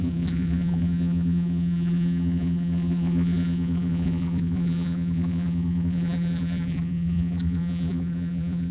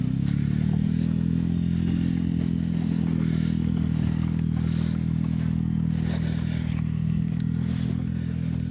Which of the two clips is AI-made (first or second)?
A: first